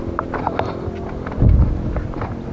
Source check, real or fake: real